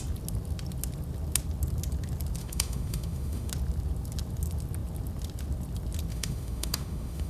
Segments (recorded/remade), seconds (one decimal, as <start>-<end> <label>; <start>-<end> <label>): 0.0-2.4 recorded; 2.4-3.5 remade; 3.5-6.1 recorded; 6.1-7.3 remade